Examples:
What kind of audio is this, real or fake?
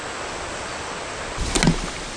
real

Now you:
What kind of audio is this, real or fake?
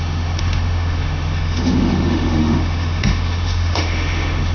fake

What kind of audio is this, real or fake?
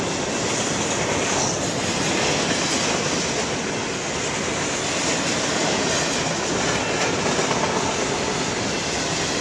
real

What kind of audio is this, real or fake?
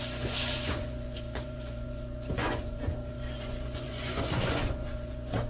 fake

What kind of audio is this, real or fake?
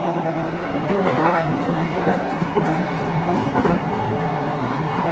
fake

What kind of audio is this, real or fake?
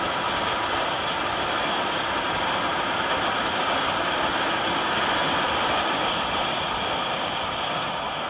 real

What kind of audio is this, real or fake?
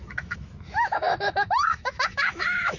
fake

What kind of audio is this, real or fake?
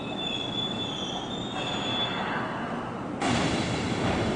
real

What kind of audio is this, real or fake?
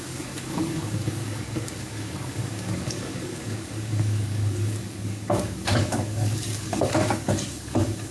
fake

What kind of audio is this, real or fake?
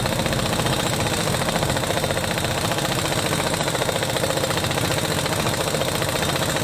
real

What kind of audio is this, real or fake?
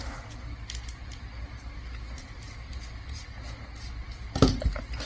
real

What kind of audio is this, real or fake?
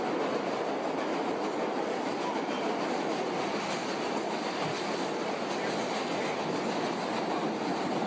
real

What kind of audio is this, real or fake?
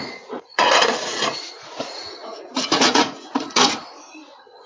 fake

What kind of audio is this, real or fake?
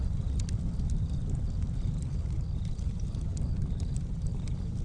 real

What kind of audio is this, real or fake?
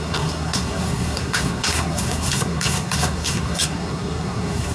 fake